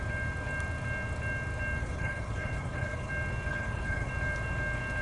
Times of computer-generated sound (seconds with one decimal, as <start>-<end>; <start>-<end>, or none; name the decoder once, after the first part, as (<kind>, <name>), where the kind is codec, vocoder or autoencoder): 1.8-3.1 (codec, HILCodec); 3.5-4.1